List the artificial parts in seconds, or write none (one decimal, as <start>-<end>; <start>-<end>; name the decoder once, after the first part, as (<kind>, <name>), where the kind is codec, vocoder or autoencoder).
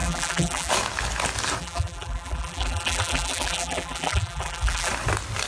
0.0-0.7 (vocoder, BigVGAN v2); 1.6-4.9